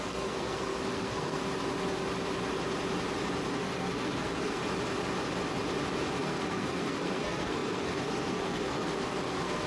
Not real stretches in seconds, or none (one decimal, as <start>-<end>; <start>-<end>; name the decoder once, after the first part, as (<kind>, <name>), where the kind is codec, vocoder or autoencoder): 0.0-1.4 (codec, SNAC); 3.5-4.6; 6.2-9.7